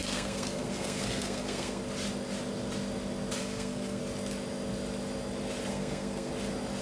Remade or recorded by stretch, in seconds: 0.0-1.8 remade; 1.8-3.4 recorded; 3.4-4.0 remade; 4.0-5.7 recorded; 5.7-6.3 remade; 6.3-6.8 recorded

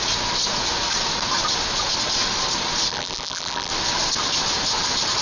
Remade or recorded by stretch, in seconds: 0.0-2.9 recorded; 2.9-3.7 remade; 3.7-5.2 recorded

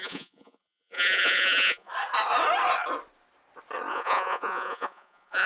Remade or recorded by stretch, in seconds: 0.0-1.9 remade; 1.9-3.9 recorded; 3.9-5.5 remade

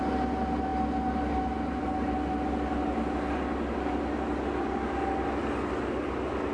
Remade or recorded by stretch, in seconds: 0.0-6.5 recorded

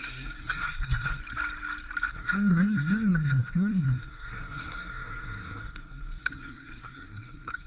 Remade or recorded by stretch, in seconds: 0.0-1.2 remade; 1.2-2.1 recorded; 2.1-7.7 remade

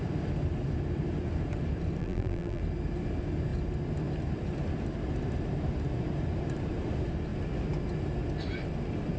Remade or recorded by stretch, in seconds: 0.0-2.0 recorded; 2.0-2.6 remade; 2.6-9.2 recorded